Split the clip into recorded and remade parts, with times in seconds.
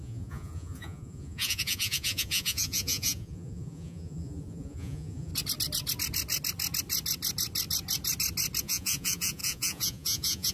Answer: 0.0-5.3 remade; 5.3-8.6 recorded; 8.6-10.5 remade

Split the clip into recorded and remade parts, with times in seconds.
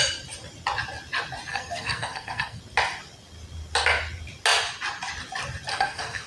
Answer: 0.0-1.5 recorded; 1.5-2.6 remade; 2.6-5.7 recorded; 5.7-6.3 remade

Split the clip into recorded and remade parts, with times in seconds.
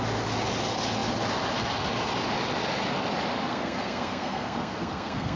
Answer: 0.0-3.5 recorded; 3.5-5.4 remade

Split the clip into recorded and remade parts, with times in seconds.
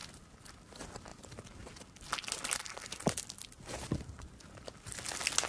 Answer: 0.0-5.5 recorded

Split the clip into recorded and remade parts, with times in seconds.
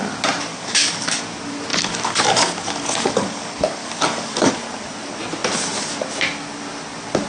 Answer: 0.0-0.5 recorded; 0.5-1.2 remade; 1.2-1.7 recorded; 1.7-4.5 remade; 4.5-7.3 recorded